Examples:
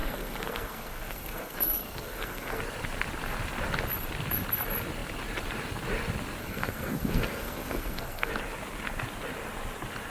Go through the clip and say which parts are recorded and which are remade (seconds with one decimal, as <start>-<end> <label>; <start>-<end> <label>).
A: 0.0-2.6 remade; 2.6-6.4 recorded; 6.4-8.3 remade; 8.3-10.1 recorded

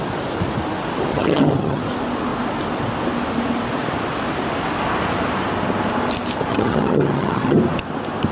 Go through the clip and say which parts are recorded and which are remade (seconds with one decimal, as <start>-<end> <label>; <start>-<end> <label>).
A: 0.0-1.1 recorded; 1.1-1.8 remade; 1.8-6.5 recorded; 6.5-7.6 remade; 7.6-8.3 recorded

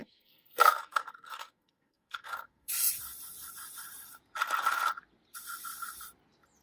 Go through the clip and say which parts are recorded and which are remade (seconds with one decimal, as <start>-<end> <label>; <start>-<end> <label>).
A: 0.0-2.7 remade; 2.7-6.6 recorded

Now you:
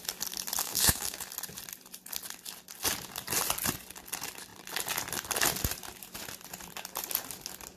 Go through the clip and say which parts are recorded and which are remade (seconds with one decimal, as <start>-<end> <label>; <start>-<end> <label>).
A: 0.0-0.6 recorded; 0.6-1.2 remade; 1.2-7.8 recorded

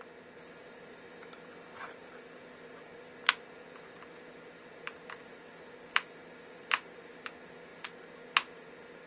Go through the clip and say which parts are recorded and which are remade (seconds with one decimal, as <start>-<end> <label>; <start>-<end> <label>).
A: 0.0-9.1 recorded

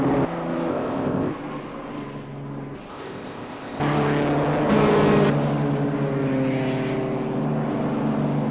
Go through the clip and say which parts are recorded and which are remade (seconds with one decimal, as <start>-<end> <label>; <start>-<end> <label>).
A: 0.0-0.7 recorded; 0.7-1.3 remade; 1.3-2.9 recorded; 2.9-3.8 remade; 3.8-8.5 recorded

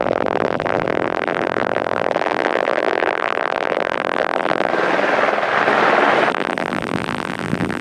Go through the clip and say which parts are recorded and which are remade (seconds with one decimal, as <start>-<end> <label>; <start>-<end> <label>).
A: 0.0-4.7 remade; 4.7-6.3 recorded; 6.3-7.8 remade